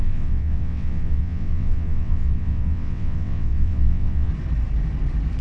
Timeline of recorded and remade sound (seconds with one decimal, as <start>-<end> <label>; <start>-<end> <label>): 0.0-4.3 remade; 4.3-5.4 recorded